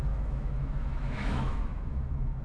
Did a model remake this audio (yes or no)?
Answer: yes